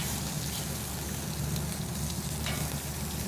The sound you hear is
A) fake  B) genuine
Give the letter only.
B